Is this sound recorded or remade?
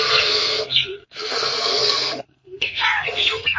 remade